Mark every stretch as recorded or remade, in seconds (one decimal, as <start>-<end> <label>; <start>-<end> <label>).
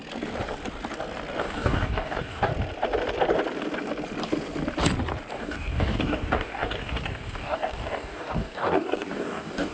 0.0-1.4 recorded; 1.4-2.5 remade; 2.5-5.3 recorded; 5.3-9.7 remade